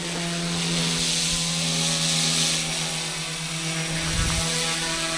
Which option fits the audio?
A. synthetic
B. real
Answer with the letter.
B